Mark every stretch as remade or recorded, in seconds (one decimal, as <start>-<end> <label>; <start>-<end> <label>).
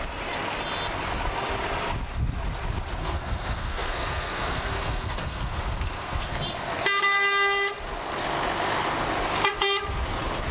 0.0-3.0 recorded; 3.0-6.4 remade; 6.4-10.5 recorded